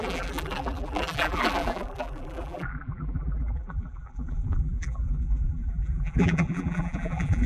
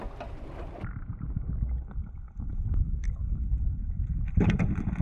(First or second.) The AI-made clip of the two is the first